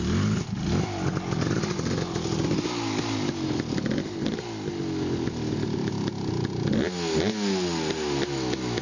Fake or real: real